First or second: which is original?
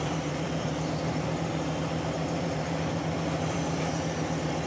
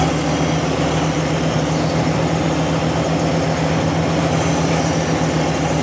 second